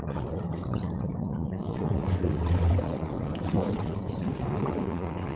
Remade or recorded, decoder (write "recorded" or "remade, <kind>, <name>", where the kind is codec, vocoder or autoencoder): remade, vocoder, WaveNeXt